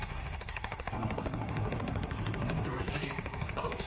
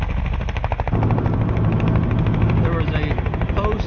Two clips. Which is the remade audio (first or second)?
first